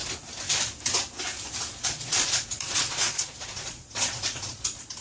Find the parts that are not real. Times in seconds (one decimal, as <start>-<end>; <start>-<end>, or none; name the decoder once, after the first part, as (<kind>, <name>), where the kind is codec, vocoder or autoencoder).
1.7-5.0 (vocoder, Vocos)